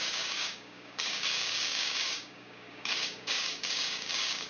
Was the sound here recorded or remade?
remade